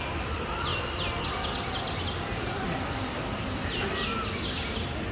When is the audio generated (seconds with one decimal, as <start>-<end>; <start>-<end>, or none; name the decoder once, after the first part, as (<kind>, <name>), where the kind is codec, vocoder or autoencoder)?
none